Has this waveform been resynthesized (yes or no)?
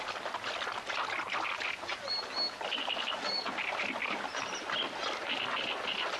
no